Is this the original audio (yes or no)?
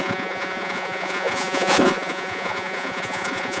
no